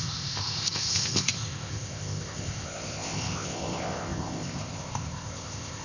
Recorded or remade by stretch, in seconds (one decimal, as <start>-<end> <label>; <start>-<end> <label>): 0.0-5.8 remade